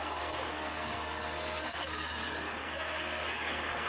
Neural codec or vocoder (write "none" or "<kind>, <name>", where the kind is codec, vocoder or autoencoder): codec, SNAC